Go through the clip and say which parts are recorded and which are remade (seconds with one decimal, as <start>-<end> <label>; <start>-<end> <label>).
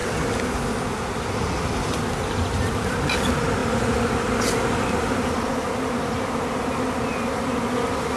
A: 0.0-8.2 recorded